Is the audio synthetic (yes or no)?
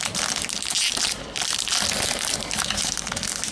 no